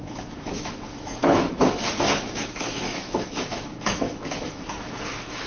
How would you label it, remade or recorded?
remade